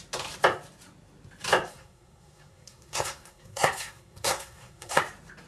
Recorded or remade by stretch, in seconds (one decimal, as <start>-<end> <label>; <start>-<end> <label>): 0.0-1.7 recorded; 1.7-5.0 remade; 5.0-5.5 recorded